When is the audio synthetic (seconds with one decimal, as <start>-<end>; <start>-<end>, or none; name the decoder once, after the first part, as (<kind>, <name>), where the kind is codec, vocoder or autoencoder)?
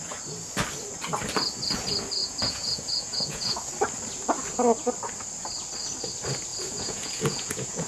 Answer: 2.2-3.7 (vocoder, Vocos); 6.5-7.9